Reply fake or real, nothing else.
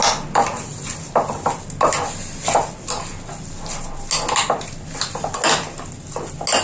real